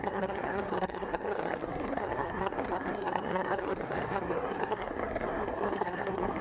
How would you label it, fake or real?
fake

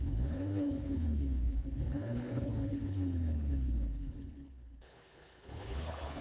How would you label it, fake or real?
fake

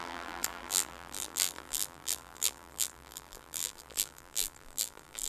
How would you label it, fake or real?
fake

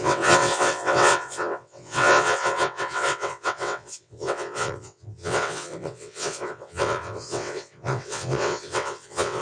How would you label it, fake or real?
fake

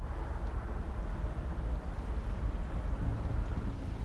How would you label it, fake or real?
real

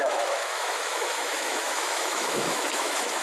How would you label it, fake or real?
fake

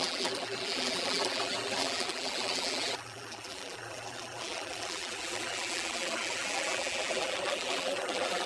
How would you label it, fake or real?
fake